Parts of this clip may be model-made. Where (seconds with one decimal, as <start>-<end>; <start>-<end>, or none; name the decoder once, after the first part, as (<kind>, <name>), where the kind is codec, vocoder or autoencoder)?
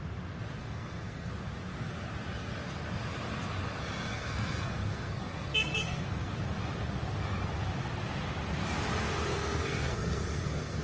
0.6-1.3 (codec, SNAC); 4.1-6.3; 9.3-10.8